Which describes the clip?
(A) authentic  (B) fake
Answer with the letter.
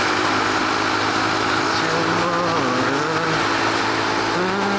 A